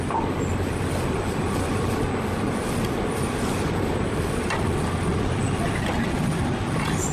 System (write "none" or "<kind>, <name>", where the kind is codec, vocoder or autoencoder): none